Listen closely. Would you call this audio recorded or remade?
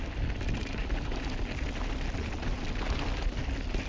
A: recorded